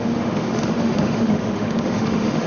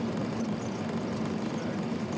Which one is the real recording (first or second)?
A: second